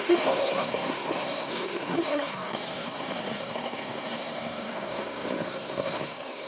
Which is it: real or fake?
fake